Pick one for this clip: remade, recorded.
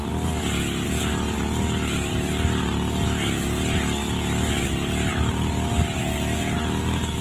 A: recorded